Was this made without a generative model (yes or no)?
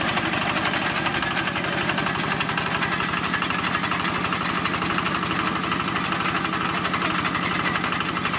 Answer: yes